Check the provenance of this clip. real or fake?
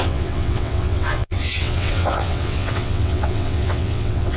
fake